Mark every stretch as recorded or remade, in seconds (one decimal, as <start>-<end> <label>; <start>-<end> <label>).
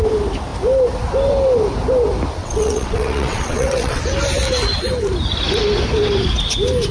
0.0-2.4 recorded; 2.4-4.0 remade; 4.0-6.9 recorded